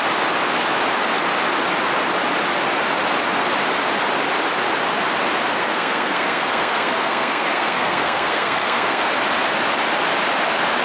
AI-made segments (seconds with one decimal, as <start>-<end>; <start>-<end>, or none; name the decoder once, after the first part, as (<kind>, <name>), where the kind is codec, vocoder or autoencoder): 5.6-9.1 (codec, SNAC)